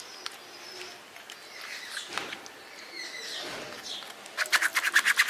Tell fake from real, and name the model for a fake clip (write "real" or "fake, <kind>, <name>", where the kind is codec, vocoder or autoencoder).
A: real